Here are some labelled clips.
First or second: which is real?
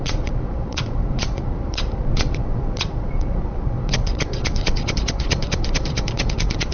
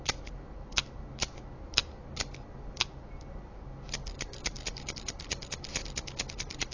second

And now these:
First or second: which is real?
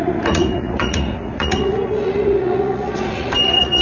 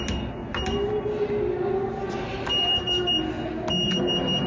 second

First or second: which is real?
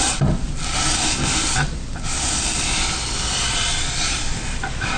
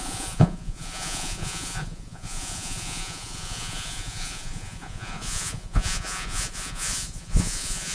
first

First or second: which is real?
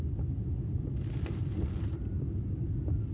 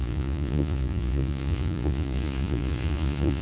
first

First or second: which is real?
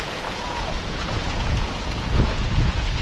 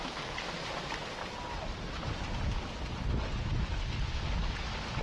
second